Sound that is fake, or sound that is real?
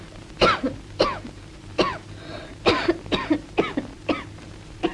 fake